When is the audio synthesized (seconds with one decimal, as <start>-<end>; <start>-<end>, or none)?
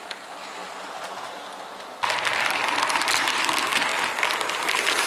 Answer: 0.0-0.6; 1.3-3.9; 4.5-5.1